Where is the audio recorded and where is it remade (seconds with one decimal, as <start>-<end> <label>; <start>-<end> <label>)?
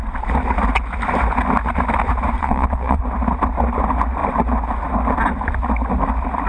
0.0-2.4 recorded; 2.4-3.0 remade; 3.0-6.5 recorded